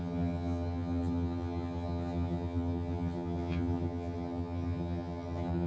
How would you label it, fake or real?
fake